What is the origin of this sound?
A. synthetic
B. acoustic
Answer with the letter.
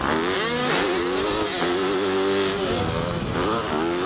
B